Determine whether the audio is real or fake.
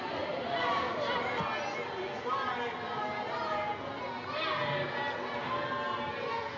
real